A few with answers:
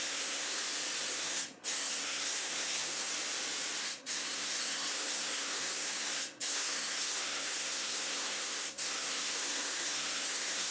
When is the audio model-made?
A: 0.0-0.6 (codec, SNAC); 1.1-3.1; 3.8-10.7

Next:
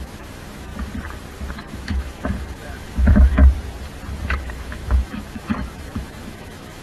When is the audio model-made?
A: 0.0-0.7 (autoencoder, DAC-VAE); 1.5-3.4; 4.2-6.8

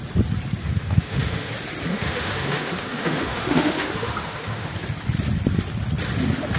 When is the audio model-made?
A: 0.6-1.5 (autoencoder, DAC-VAE); 1.9-4.7